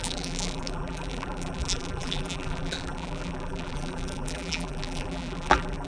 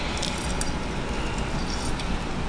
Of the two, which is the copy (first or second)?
first